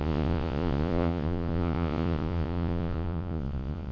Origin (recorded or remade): remade